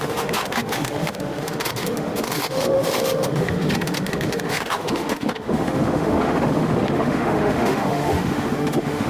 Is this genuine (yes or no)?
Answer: no